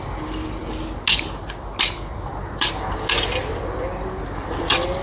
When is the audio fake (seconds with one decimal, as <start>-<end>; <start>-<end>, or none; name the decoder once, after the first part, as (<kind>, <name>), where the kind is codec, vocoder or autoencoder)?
none